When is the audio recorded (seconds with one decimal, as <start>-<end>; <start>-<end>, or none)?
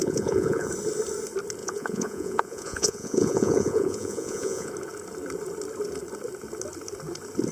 0.7-1.6; 4.7-7.5